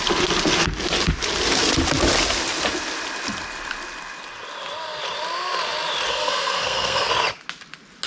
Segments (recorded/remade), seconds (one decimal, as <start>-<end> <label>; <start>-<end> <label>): 0.0-6.1 recorded; 6.1-7.1 remade; 7.1-8.1 recorded